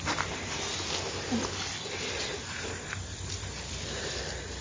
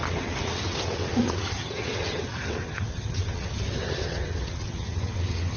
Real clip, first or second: first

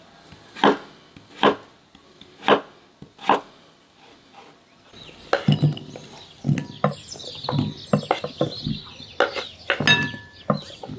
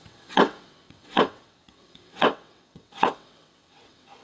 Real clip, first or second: first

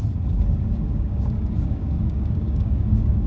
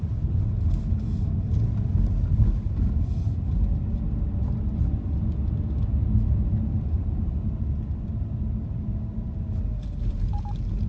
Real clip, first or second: second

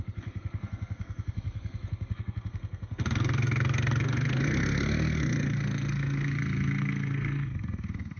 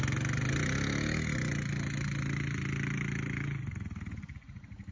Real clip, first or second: second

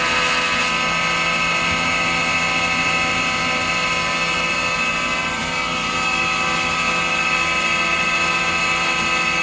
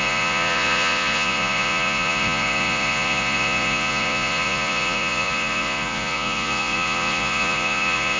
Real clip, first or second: first